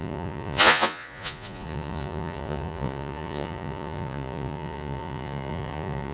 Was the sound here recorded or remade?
remade